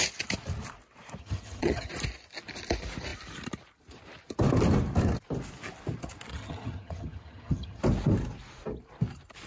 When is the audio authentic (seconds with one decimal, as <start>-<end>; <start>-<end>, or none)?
0.0-1.2; 1.9-6.3; 7.8-9.5